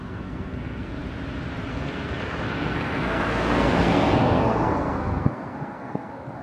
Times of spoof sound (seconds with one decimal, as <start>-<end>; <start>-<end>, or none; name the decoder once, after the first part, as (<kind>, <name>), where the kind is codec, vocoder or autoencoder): 0.0-1.0 (codec, SNAC); 1.7-6.4